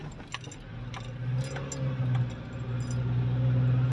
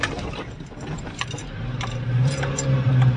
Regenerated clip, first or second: second